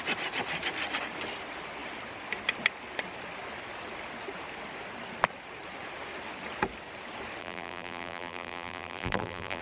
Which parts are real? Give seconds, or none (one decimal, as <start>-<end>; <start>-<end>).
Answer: 0.0-7.4